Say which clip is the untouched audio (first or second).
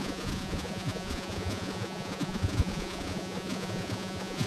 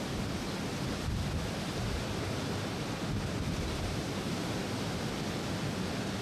second